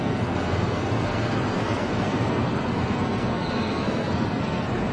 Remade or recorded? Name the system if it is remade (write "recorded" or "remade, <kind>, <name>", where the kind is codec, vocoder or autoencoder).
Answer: remade, codec, SNAC